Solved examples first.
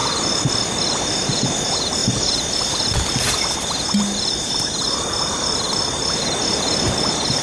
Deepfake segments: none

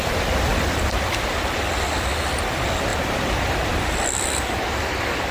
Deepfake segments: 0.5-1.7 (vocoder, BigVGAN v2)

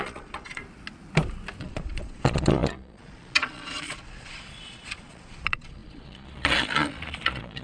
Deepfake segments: 0.0-0.6 (vocoder, Vocos); 1.6-7.6